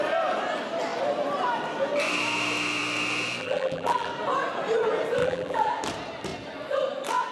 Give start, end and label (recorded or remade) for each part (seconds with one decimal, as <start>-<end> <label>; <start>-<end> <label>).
0.0-3.4 recorded; 3.4-4.1 remade; 4.1-5.2 recorded; 5.2-5.7 remade; 5.7-7.3 recorded

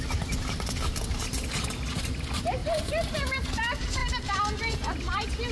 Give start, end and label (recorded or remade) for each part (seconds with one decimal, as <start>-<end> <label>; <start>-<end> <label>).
0.0-2.6 recorded; 2.6-3.5 remade; 3.5-5.5 recorded

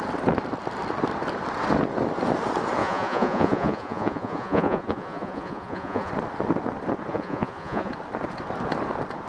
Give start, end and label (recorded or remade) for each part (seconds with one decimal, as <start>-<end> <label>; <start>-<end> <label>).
0.0-2.8 recorded; 2.8-6.1 remade; 6.1-7.1 recorded; 7.1-7.9 remade; 7.9-9.3 recorded

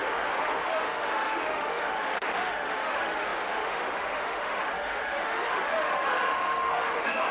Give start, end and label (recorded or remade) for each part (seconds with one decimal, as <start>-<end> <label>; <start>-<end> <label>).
0.0-7.3 remade